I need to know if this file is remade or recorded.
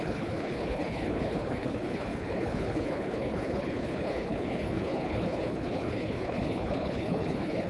remade